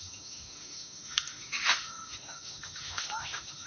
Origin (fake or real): fake